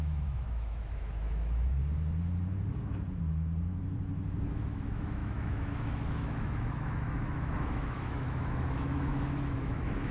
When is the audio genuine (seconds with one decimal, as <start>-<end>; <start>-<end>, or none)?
1.8-4.5